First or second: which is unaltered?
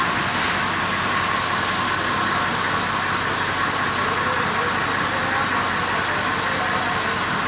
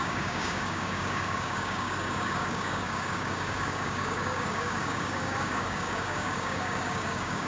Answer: first